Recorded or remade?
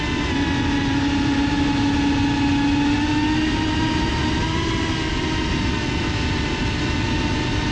recorded